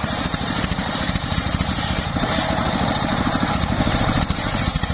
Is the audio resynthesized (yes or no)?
yes